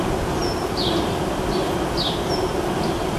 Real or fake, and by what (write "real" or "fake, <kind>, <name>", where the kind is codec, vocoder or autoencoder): real